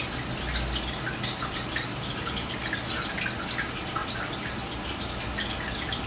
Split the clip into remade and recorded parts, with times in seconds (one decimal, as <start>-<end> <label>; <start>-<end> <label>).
0.0-6.1 recorded

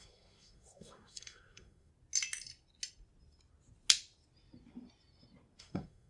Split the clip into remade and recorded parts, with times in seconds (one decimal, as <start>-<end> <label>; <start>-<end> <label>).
0.0-1.9 remade; 1.9-5.6 recorded; 5.6-6.1 remade